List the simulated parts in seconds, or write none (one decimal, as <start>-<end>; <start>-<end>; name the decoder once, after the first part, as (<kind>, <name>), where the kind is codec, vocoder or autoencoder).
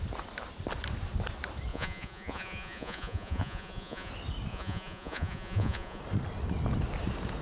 1.7-4.1 (vocoder, Vocos); 4.5-6.0